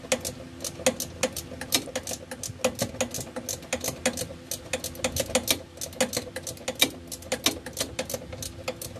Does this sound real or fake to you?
real